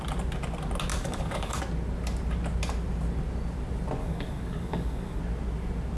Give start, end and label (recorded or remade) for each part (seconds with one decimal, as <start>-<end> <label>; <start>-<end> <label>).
0.0-0.9 recorded; 0.9-1.6 remade; 1.6-4.0 recorded; 4.0-5.2 remade; 5.2-6.0 recorded